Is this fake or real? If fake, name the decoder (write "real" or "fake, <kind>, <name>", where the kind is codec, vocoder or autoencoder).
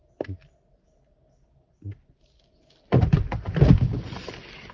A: real